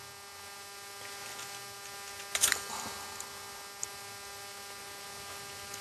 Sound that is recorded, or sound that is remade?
recorded